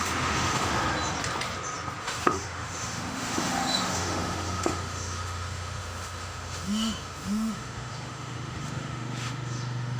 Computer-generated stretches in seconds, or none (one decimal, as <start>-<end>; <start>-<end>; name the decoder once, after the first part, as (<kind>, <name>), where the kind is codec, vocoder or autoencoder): 0.0-0.8 (autoencoder, DAC-VAE); 2.0-10.0